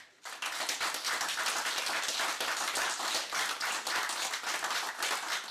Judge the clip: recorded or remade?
recorded